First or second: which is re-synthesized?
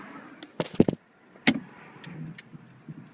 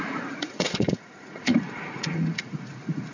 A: second